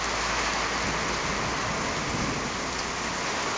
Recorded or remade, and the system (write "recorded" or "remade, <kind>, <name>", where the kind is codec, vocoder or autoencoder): recorded